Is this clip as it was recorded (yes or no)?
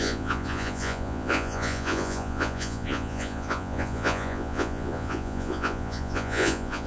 no